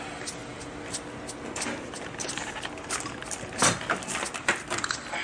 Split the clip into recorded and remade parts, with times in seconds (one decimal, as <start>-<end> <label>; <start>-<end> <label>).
0.0-5.2 recorded